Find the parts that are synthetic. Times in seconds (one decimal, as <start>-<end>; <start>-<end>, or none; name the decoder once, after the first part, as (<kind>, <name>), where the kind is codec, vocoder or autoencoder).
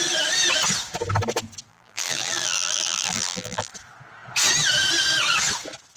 1.7-3.7 (vocoder, BigVGAN v2)